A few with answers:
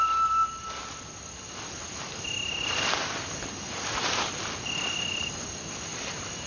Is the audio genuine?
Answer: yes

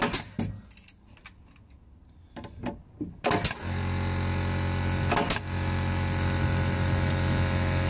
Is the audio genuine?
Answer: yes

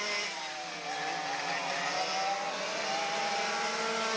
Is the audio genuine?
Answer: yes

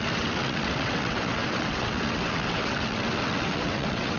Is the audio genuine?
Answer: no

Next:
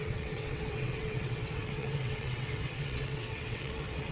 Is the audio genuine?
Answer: no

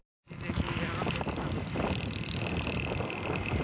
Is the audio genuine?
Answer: yes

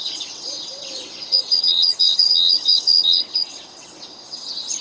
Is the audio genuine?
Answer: no